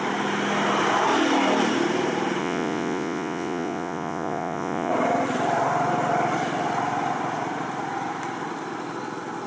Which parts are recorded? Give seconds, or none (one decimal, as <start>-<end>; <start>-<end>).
0.0-2.4; 4.9-9.5